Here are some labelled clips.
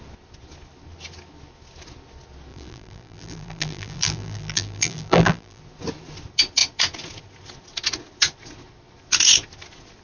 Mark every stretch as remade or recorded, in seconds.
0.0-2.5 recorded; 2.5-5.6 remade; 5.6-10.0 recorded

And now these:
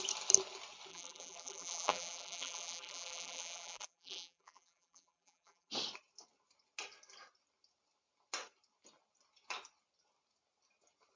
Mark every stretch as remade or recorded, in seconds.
0.0-0.9 recorded; 0.9-5.7 remade; 5.7-11.2 recorded